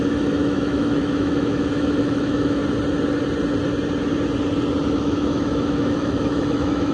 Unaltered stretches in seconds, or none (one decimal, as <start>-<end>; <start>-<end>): 2.6-4.9